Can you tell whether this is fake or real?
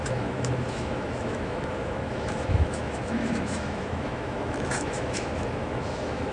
fake